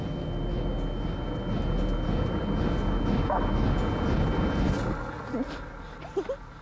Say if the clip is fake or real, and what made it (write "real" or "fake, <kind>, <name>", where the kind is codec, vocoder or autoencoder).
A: real